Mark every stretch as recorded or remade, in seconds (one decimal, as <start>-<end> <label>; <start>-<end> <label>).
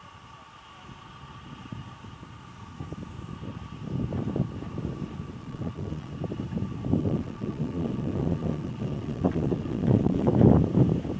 0.0-5.4 recorded; 5.4-6.1 remade; 6.1-7.0 recorded; 7.0-10.3 remade; 10.3-11.2 recorded